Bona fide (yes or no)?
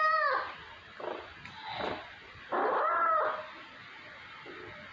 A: yes